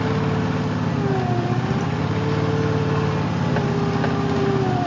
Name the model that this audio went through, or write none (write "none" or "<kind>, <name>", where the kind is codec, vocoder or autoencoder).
none